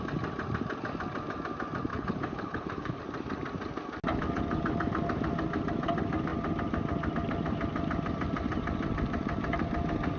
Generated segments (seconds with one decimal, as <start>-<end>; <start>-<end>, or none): 1.9-3.0